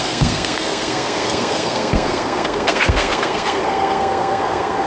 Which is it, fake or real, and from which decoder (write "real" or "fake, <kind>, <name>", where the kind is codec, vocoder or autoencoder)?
fake, codec, SNAC